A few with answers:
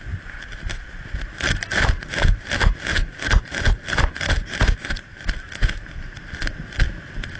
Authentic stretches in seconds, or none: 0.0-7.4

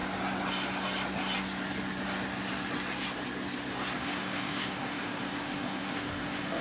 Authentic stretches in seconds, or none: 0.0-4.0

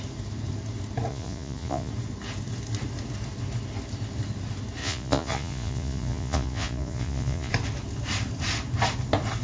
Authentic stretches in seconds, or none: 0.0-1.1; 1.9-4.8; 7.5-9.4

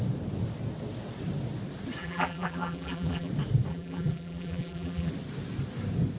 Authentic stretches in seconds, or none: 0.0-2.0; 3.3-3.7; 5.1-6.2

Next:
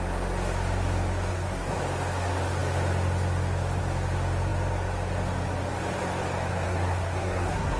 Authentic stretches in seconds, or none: 0.0-1.3; 1.8-6.5

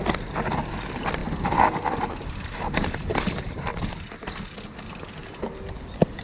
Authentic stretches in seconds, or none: 0.0-1.2; 4.9-6.2